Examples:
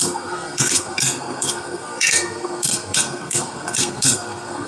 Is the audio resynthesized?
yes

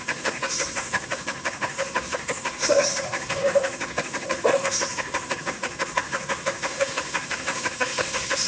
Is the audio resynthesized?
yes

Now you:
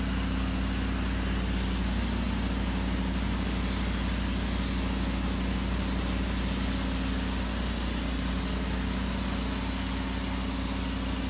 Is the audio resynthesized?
no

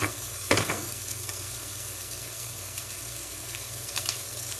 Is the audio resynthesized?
yes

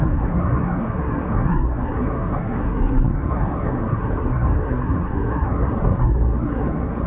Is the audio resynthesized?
yes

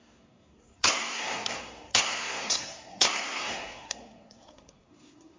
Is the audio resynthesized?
yes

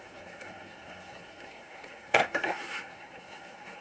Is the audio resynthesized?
yes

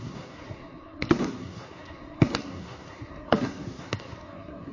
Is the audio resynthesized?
yes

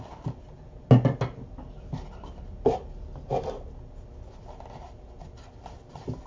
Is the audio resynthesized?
no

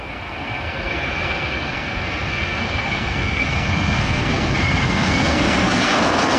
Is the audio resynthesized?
yes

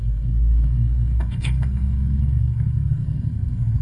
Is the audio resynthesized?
yes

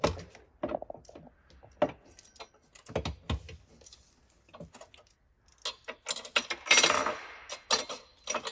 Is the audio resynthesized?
no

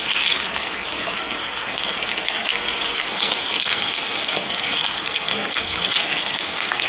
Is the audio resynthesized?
yes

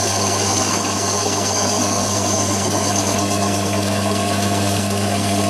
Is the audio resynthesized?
yes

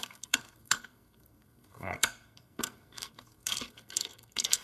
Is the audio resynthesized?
yes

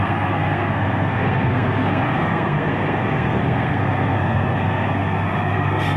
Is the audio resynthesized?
yes